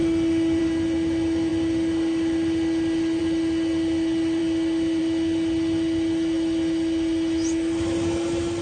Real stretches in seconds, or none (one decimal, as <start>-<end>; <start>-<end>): 0.0-8.6